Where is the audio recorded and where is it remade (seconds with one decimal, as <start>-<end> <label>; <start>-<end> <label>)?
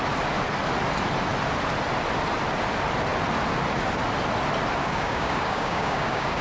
0.0-4.8 recorded; 4.8-6.4 remade